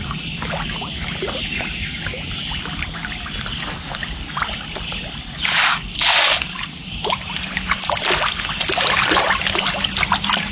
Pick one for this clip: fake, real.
real